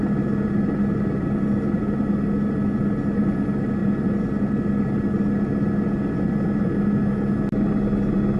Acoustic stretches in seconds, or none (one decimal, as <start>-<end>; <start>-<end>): 0.0-8.4